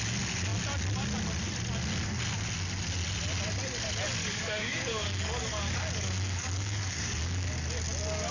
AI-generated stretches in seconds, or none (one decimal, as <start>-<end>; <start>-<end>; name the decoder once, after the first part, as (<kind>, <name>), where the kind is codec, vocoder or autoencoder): 4.2-7.5 (codec, DAC)